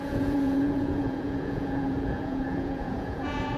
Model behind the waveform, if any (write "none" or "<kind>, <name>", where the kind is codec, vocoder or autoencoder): vocoder, Vocos